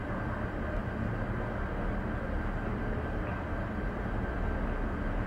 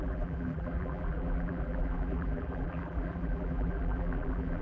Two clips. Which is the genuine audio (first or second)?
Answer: first